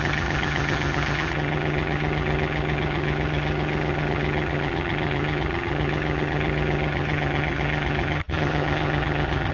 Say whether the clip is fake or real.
fake